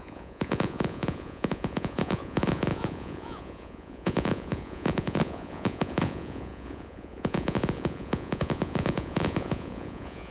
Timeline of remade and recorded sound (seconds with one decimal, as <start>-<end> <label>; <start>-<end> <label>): 0.0-10.3 remade